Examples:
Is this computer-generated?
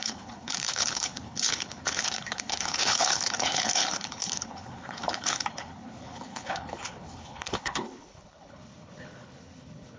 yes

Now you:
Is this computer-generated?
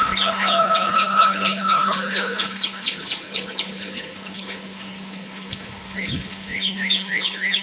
yes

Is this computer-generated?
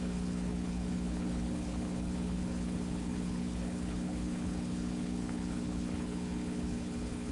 yes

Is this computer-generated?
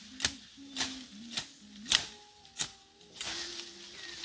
no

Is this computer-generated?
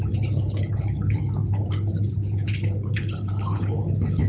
yes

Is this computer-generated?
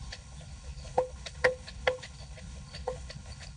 yes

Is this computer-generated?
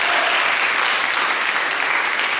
no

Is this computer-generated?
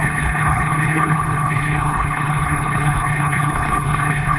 yes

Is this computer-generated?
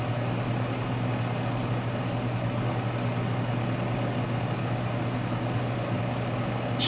no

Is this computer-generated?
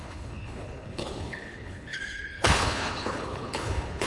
yes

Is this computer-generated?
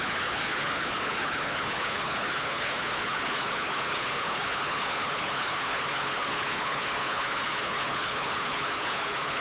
yes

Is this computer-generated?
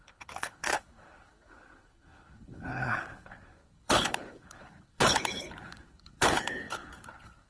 yes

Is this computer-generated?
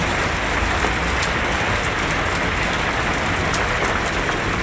no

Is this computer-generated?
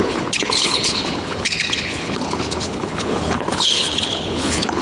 yes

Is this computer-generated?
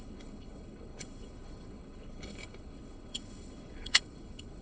yes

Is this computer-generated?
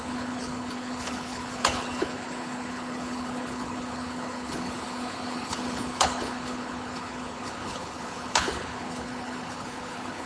yes